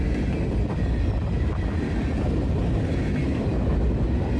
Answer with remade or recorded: recorded